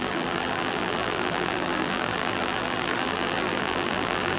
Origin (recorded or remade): remade